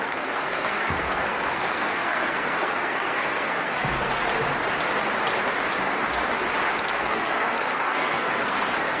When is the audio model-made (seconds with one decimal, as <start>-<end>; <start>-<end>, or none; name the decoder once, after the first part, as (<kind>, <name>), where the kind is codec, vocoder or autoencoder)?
0.0-4.2 (codec, SNAC); 6.8-9.0